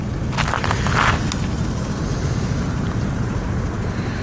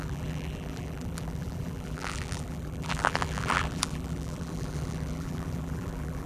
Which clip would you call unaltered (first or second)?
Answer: first